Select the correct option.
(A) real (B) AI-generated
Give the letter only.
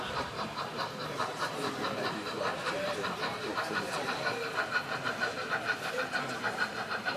B